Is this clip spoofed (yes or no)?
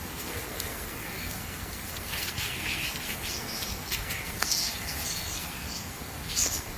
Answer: yes